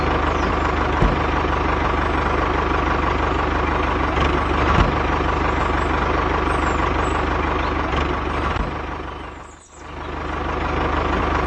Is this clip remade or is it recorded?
recorded